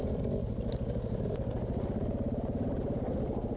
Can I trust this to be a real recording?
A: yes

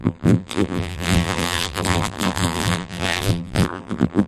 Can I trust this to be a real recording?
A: no